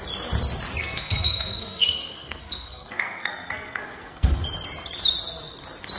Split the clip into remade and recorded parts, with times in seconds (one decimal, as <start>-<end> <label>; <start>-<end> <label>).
0.0-0.8 recorded; 0.8-4.4 remade; 4.4-6.0 recorded